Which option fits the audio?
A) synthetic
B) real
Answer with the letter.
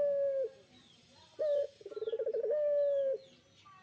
B